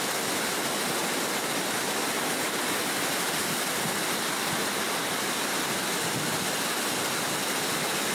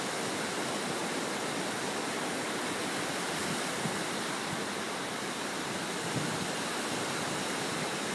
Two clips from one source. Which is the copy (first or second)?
second